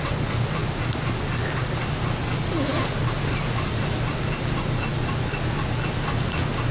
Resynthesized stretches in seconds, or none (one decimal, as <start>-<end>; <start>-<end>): none